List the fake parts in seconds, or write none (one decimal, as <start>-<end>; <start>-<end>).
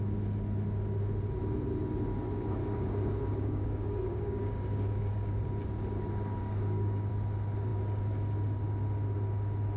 2.6-5.4; 6.4-7.1